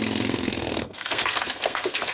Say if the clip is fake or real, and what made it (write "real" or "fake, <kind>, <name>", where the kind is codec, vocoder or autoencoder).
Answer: fake, codec, SNAC